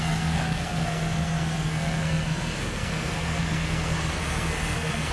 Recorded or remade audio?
remade